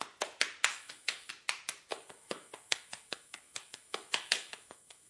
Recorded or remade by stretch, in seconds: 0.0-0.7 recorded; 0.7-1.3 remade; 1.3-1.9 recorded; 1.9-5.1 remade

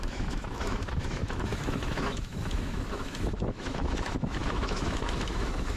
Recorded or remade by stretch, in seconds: 0.0-5.8 remade